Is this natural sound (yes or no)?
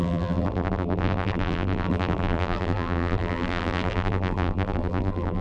no